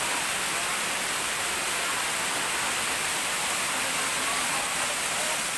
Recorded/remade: recorded